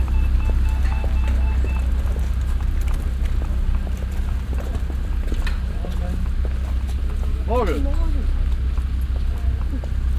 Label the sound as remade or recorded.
recorded